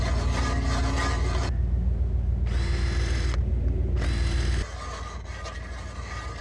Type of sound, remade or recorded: recorded